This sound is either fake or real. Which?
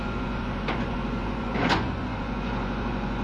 fake